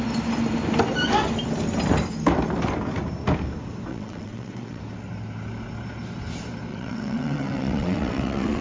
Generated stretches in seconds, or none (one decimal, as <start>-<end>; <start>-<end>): 3.9-4.8; 6.7-8.6